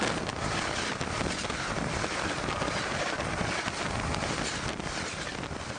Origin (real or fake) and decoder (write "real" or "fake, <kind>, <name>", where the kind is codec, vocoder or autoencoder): real